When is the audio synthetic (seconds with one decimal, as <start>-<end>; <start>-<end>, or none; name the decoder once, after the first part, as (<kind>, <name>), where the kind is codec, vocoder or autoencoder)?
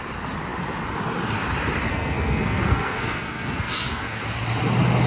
1.9-4.2 (codec, SNAC)